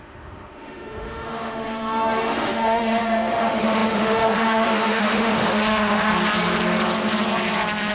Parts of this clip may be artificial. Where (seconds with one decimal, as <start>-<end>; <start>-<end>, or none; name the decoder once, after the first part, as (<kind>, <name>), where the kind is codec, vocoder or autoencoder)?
0.0-6.1 (autoencoder, DAC-VAE)